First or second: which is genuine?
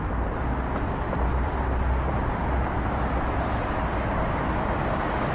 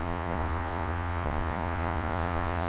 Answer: first